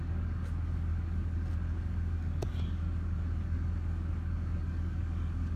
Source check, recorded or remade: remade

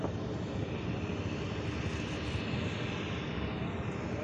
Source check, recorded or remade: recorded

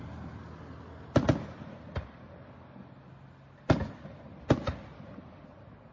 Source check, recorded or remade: recorded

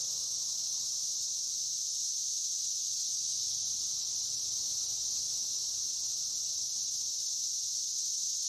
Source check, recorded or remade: recorded